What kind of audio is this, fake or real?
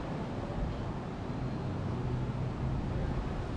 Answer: real